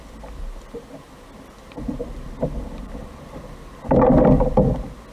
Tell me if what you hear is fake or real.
real